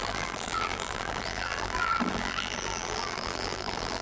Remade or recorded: remade